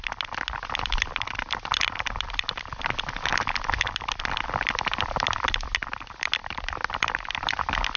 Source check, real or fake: real